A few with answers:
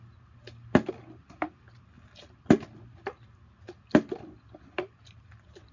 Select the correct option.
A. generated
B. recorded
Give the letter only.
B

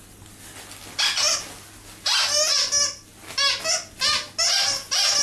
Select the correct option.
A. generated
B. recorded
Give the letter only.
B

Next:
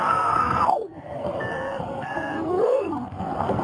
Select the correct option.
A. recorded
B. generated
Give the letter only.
B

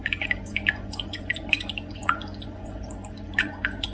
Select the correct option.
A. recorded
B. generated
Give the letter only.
B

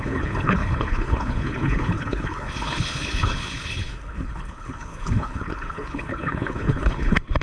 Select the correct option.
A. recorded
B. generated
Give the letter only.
B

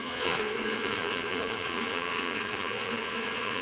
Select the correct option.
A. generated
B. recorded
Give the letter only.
A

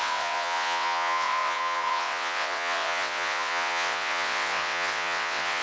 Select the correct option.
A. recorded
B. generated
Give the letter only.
B